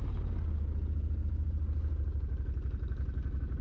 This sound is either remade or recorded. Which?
recorded